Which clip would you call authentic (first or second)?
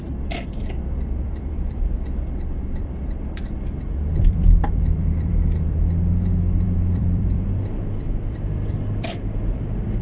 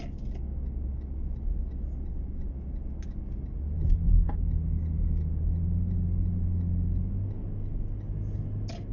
second